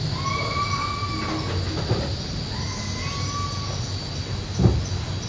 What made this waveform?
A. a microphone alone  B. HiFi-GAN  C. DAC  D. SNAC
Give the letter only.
A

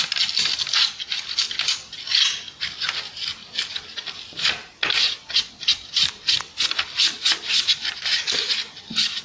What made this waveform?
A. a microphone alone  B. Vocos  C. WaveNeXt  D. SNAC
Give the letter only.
A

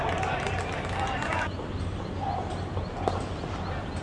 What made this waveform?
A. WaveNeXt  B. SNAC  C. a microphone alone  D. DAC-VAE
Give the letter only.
C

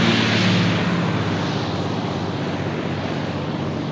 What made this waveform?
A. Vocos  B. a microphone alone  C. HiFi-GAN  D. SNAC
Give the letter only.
B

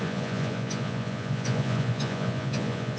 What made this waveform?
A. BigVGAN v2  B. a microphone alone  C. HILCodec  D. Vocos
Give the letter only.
D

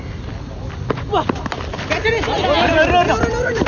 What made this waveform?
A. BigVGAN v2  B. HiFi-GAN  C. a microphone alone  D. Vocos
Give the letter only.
C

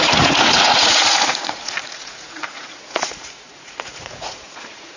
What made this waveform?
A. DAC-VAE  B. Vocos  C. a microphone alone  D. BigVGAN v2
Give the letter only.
B